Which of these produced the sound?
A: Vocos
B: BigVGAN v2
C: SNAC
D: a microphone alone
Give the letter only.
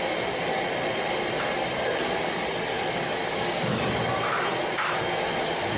D